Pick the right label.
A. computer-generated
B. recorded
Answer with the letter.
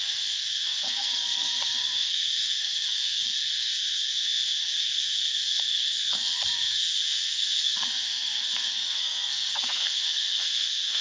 A